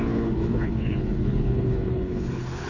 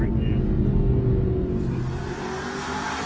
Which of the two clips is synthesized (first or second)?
first